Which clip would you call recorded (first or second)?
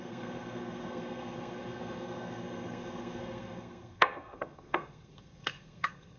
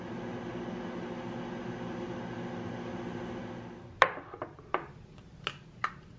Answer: second